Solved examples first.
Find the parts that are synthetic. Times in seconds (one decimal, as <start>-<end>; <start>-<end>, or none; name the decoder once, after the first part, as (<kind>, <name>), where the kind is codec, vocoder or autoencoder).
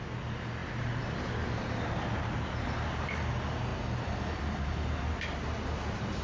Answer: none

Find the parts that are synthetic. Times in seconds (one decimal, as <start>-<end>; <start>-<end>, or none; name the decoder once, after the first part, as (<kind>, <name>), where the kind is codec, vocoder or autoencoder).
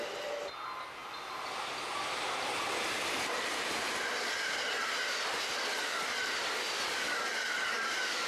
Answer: none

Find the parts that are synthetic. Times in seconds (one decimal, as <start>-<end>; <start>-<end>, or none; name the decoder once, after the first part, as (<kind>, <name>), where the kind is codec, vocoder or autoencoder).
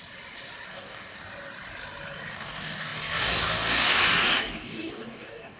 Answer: 0.7-1.2 (codec, DAC); 2.3-5.6